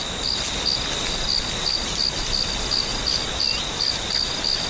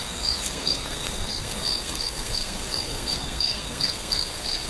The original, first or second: first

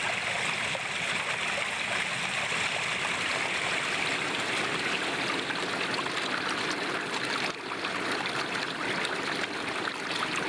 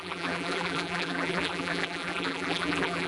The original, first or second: first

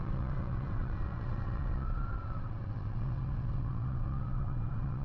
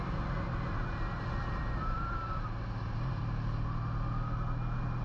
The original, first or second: second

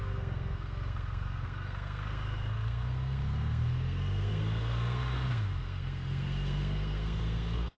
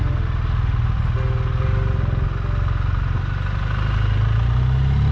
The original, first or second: second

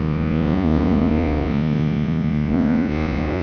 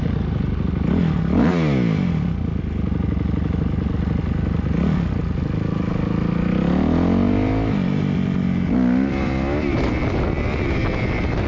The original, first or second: second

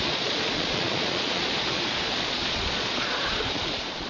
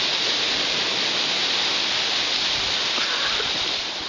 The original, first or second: second